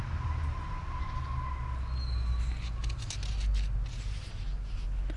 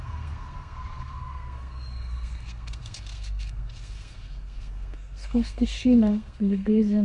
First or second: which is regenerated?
second